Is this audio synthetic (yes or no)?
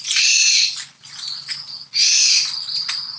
no